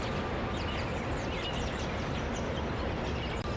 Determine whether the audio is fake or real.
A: real